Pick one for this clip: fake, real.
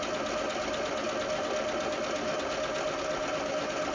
real